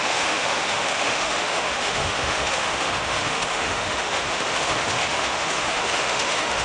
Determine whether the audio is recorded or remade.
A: remade